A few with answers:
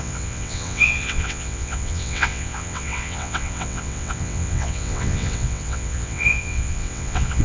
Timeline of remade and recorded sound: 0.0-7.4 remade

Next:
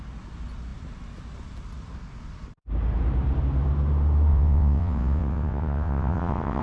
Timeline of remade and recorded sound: 0.0-4.3 recorded; 4.3-6.6 remade

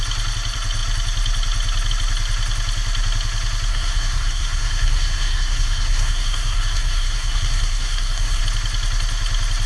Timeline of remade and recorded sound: 0.0-3.7 recorded; 3.7-8.4 remade; 8.4-9.7 recorded

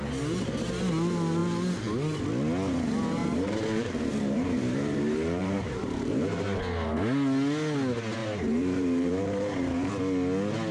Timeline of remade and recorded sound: 0.0-3.2 recorded; 3.2-6.6 remade; 6.6-8.2 recorded; 8.2-9.9 remade; 9.9-10.7 recorded